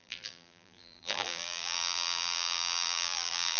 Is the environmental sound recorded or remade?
remade